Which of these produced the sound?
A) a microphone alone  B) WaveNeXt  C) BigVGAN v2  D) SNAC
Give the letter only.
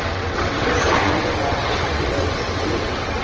B